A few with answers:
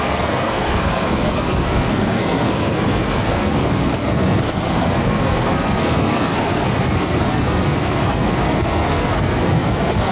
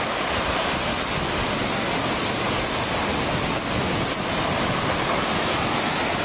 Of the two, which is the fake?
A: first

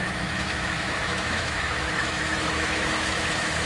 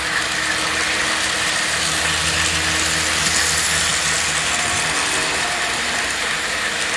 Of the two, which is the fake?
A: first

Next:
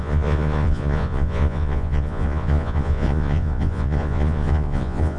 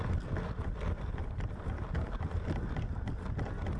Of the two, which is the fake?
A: first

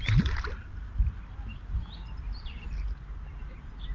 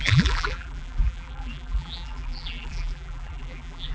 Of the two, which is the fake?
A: second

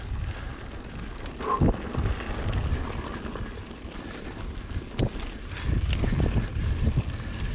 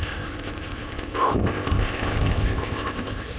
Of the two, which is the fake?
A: second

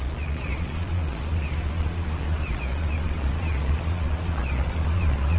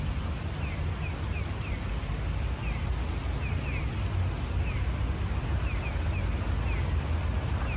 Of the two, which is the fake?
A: first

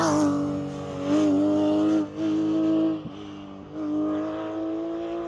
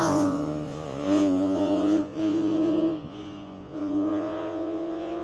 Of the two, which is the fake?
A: second